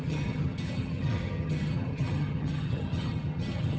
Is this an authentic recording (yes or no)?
no